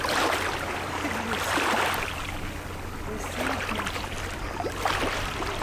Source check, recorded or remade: recorded